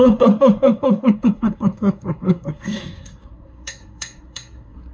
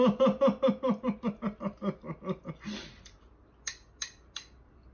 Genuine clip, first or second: second